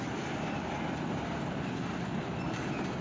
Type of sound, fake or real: real